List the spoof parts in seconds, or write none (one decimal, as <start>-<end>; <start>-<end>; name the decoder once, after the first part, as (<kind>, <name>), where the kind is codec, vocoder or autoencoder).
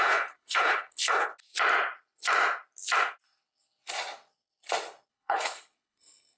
0.0-1.3 (codec, HILCodec); 5.1-6.4